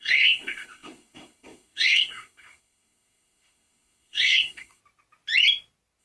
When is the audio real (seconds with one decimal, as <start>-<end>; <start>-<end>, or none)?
4.8-6.0